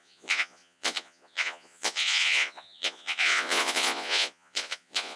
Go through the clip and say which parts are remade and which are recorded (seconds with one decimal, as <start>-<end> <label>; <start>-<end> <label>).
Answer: 0.0-5.2 remade